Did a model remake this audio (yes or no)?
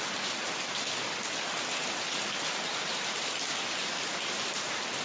no